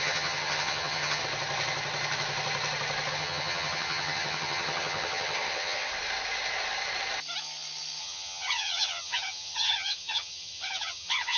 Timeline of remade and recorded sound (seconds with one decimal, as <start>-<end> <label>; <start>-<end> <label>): 0.0-1.2 remade; 1.2-3.1 recorded; 3.1-5.9 remade; 5.9-8.0 recorded; 8.0-11.4 remade